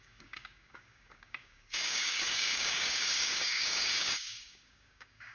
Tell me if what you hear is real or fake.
fake